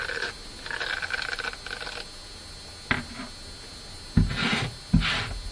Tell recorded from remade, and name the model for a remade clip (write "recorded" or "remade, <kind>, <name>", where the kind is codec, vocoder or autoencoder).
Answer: recorded